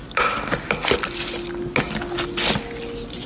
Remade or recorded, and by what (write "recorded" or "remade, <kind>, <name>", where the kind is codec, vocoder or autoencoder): recorded